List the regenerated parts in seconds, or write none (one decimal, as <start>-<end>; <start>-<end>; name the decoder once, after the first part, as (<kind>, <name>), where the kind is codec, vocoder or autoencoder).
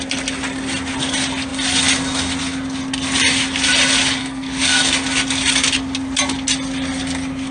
4.2-4.8 (codec, SNAC)